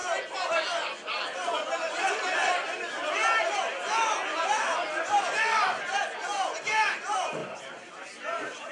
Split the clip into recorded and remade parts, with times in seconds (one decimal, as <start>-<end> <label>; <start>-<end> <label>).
0.0-5.0 recorded; 5.0-8.7 remade